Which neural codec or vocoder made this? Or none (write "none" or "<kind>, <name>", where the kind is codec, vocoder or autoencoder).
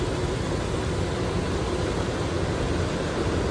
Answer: none